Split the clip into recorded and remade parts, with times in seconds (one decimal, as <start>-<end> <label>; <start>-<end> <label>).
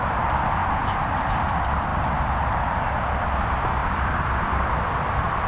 0.0-0.6 recorded; 0.6-1.3 remade; 1.3-3.8 recorded; 3.8-5.5 remade